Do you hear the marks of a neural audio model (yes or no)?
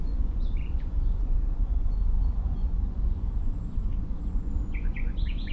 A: yes